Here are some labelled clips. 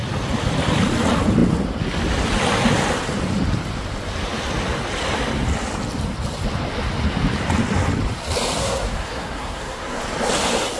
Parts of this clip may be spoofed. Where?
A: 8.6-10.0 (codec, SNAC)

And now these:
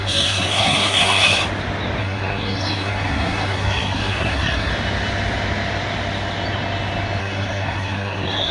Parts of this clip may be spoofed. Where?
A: 0.0-1.4 (codec, SNAC); 2.0-4.7; 7.2-8.5

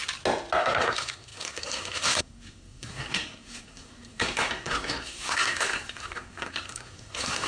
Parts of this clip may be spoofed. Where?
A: 0.6-7.5 (codec, SNAC)

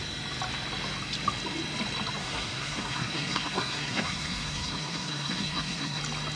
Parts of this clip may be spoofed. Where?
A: 2.2-6.0 (codec, SNAC)

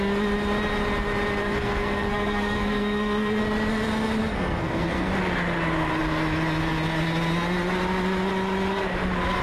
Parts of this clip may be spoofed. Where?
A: 1.4-3.4 (codec, SNAC); 4.2-5.1

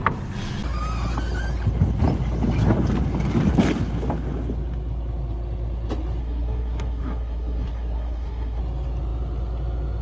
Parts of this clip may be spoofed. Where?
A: 6.2-8.6 (codec, SNAC)

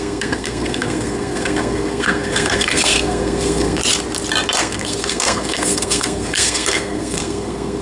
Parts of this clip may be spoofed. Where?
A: 0.0-3.8 (codec, SNAC); 4.6-7.8

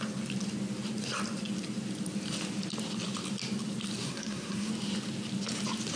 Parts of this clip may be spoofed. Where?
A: 4.0-4.7 (codec, SNAC)